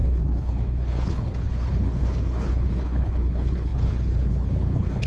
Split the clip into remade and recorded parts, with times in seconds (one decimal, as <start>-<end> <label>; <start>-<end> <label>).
0.0-5.1 remade